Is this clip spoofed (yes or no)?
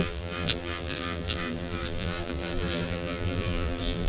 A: yes